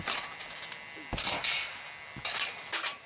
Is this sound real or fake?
real